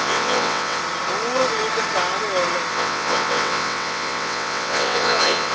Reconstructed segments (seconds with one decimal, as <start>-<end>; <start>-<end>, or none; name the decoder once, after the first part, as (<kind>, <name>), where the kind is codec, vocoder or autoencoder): 0.0-0.8 (vocoder, WaveNeXt); 2.7-5.5